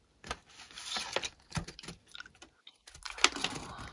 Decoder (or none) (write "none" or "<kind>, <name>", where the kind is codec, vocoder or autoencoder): none